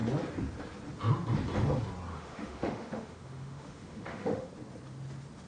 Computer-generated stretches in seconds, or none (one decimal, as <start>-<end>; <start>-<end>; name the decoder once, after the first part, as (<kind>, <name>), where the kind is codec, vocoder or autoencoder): 2.1-4.5 (autoencoder, DAC-VAE)